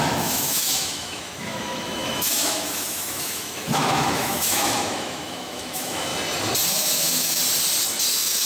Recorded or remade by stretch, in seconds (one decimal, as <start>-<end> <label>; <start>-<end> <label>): 0.0-6.1 remade; 6.1-6.7 recorded; 6.7-7.4 remade; 7.4-8.1 recorded; 8.1-8.5 remade